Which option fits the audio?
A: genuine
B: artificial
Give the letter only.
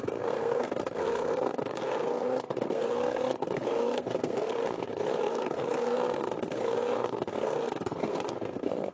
B